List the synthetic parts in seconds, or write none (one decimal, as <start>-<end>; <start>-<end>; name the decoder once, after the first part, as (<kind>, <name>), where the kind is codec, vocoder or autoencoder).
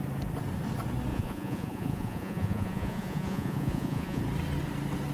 1.1-4.2 (vocoder, Vocos)